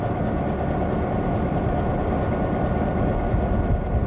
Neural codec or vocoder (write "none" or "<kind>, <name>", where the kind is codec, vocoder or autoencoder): none